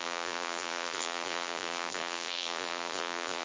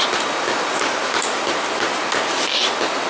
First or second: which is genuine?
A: second